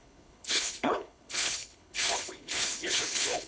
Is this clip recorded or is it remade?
remade